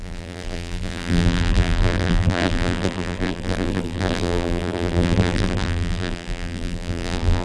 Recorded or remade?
remade